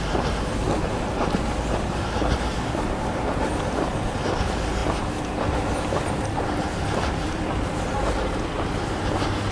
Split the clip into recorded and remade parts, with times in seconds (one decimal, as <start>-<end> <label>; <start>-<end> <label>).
0.0-9.5 recorded